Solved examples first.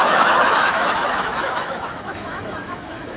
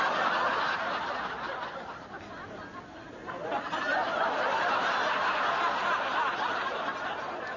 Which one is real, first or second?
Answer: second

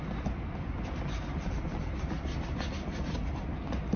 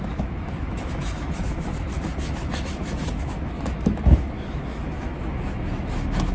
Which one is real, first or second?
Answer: first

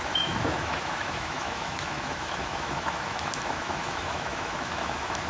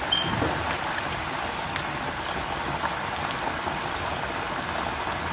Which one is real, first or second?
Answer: second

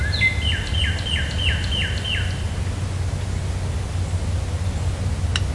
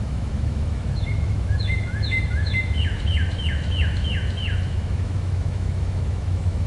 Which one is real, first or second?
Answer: first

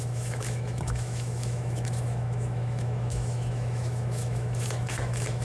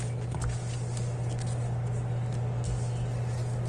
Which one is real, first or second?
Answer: second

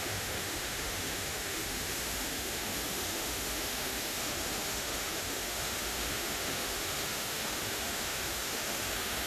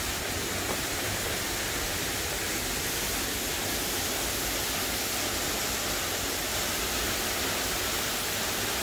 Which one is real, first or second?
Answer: second